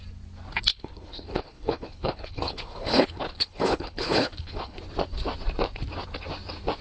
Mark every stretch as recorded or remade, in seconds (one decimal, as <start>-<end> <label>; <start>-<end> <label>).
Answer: 0.0-0.7 recorded; 0.7-4.8 remade; 4.8-6.8 recorded